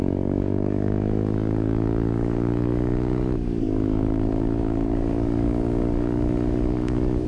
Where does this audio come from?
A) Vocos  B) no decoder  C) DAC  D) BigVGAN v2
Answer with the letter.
C